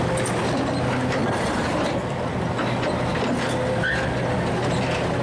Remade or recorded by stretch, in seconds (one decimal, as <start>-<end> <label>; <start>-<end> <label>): 0.0-1.2 recorded; 1.2-2.3 remade; 2.3-5.2 recorded